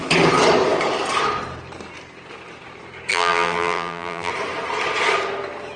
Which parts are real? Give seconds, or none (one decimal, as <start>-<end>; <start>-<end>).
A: 0.0-3.1; 4.3-5.8